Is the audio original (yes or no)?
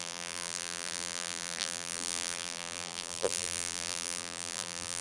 no